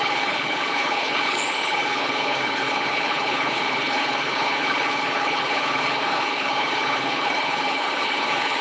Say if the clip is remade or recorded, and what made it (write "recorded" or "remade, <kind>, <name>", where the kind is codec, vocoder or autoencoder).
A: remade, codec, HILCodec